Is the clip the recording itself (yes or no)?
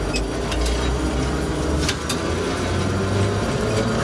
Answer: yes